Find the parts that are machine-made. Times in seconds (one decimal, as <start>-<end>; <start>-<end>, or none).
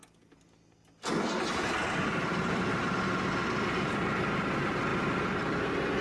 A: 1.8-3.0